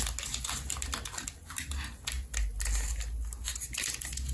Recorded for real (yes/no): yes